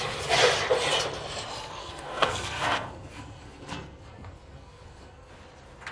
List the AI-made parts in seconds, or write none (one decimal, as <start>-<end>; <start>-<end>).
1.8-5.3